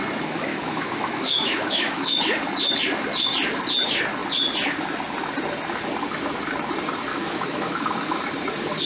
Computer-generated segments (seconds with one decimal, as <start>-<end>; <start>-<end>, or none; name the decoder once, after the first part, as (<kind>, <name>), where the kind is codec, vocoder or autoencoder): 0.5-2.2 (autoencoder, DAC-VAE); 7.1-8.2